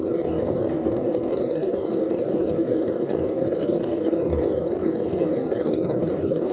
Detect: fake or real fake